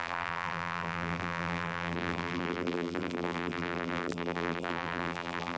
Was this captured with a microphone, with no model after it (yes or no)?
no